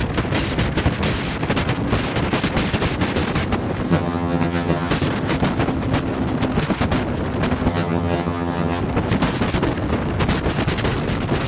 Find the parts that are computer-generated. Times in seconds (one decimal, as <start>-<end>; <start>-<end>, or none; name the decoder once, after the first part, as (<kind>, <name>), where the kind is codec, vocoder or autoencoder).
3.9-4.9 (vocoder, HiFi-GAN); 7.7-8.8